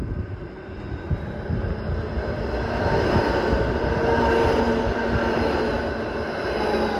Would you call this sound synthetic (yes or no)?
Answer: no